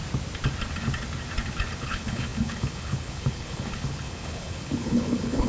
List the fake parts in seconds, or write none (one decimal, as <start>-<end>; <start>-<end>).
1.8-5.5